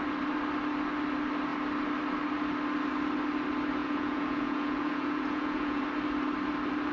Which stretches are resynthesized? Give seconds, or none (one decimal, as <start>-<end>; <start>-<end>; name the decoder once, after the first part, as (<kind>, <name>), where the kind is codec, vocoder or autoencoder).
3.8-5.8 (vocoder, Vocos)

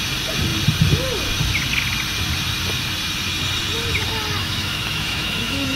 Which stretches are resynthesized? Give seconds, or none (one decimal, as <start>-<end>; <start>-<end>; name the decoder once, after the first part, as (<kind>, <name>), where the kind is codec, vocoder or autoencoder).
4.4-5.8 (autoencoder, DAC-VAE)

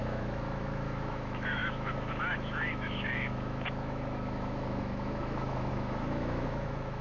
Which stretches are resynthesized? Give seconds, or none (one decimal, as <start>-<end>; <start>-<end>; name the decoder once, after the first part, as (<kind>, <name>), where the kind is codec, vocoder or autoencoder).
0.0-7.0 (autoencoder, DAC-VAE)